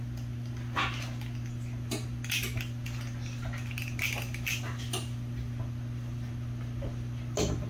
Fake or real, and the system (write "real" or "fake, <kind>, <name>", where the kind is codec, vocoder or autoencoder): real